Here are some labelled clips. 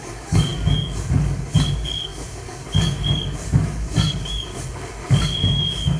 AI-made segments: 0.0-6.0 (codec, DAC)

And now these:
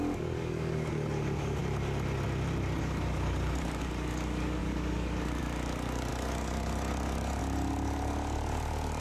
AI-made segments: 0.0-1.6 (codec, DAC); 2.8-9.0

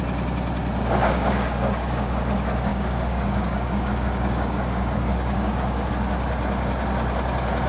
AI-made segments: 1.0-2.2 (codec, DAC); 2.7-5.9

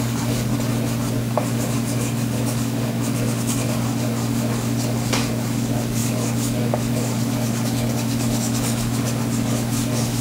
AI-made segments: 0.0-0.5 (codec, DAC); 1.2-10.2